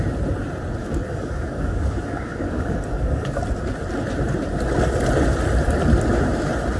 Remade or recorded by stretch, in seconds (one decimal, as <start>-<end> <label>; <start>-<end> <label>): 0.0-0.8 recorded; 0.8-3.4 remade; 3.4-6.8 recorded